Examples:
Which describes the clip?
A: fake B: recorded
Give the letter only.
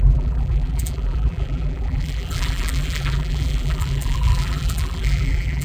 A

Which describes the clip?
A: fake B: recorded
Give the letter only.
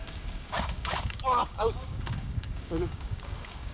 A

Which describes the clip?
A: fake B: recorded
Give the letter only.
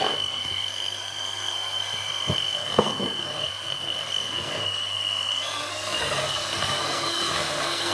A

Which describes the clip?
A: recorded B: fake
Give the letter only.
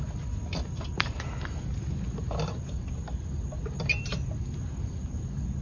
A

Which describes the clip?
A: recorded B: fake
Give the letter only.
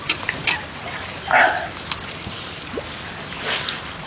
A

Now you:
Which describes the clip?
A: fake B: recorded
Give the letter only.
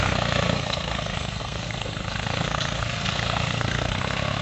A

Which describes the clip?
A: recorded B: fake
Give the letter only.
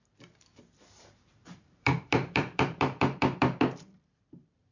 B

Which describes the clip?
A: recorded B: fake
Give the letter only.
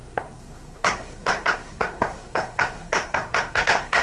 B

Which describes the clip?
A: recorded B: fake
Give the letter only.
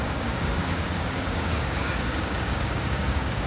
B